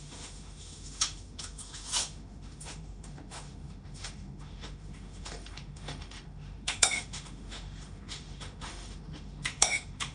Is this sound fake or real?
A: fake